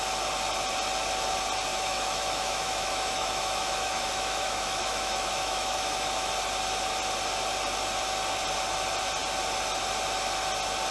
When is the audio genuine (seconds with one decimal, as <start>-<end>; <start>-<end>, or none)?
0.0-1.7; 6.3-10.9